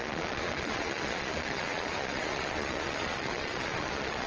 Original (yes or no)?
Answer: no